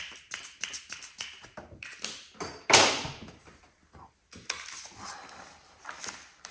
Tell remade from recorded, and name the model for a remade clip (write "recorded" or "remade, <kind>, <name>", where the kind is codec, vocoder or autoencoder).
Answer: recorded